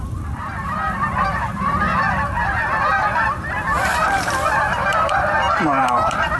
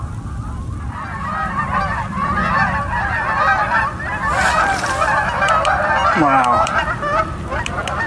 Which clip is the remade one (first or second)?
first